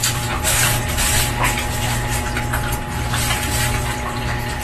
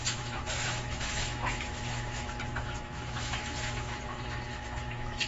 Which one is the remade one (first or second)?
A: second